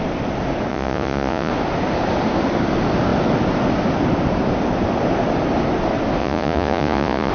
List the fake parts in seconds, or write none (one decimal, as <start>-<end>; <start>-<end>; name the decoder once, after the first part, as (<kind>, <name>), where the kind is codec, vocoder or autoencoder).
0.7-1.5 (vocoder, Vocos); 6.2-7.3